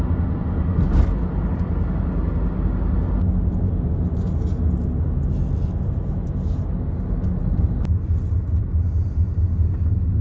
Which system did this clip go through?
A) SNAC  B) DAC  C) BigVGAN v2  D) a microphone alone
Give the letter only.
D